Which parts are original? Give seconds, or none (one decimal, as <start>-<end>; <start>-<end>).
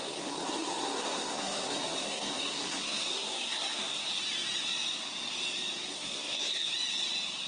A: 4.1-5.9; 6.7-7.5